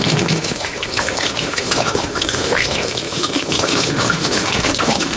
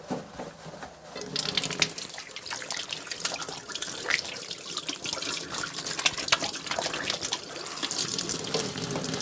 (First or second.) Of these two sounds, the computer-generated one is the first